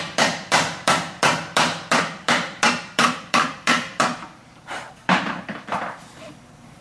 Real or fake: fake